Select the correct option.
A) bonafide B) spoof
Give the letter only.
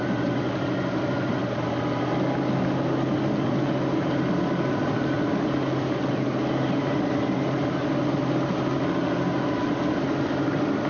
A